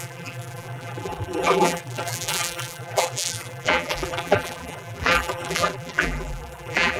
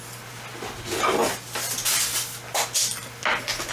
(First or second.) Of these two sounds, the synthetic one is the first